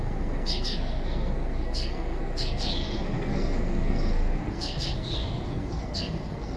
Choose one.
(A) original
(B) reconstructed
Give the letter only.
B